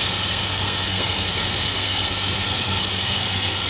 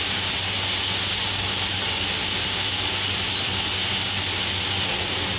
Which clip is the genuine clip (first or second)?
second